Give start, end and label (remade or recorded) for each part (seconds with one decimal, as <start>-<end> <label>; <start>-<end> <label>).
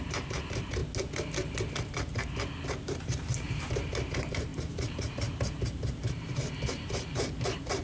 0.0-0.8 remade; 0.8-2.8 recorded; 2.8-7.8 remade